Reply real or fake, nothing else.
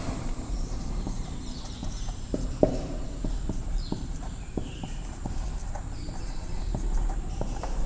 fake